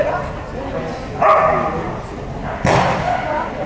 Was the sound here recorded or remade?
recorded